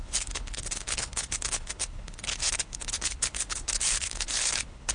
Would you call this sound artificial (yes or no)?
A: yes